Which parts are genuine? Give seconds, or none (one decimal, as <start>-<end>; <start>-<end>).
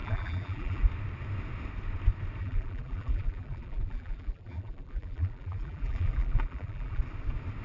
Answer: 0.8-2.4; 7.0-7.6